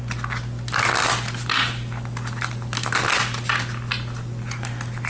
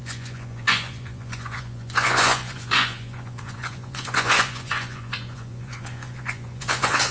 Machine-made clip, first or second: second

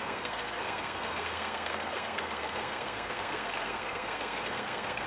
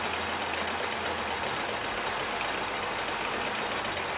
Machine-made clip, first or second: first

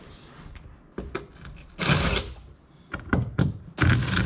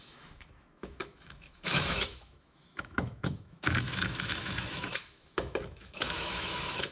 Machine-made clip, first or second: second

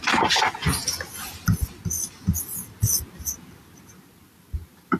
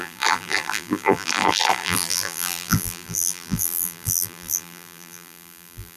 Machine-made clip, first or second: second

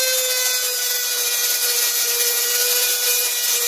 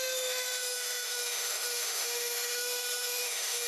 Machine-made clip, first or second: second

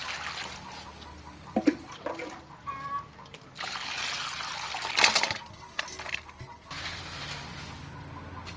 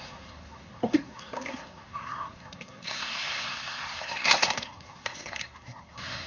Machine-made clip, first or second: second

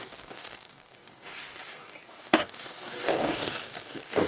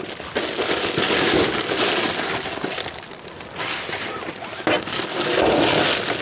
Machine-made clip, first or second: first